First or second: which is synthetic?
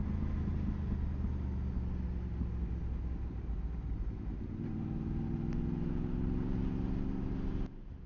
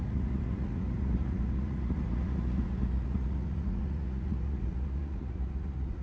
second